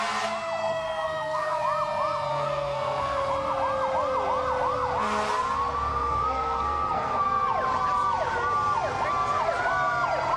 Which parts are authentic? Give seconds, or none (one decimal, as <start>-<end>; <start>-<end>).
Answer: 0.0-0.6; 1.6-2.3; 3.3-5.9; 7.2-10.4